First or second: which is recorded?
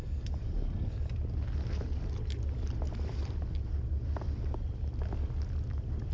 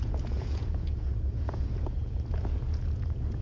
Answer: first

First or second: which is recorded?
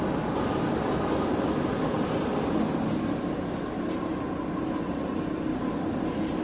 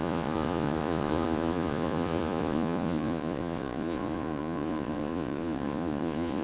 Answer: first